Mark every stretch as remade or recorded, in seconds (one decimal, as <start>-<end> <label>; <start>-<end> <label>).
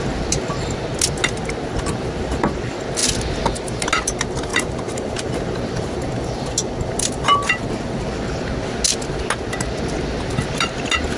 0.0-4.5 recorded; 4.5-5.1 remade; 5.1-11.2 recorded